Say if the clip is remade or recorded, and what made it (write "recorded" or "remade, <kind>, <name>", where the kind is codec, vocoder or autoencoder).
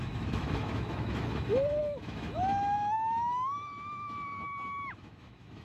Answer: remade, autoencoder, DAC-VAE